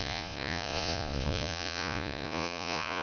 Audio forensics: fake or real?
fake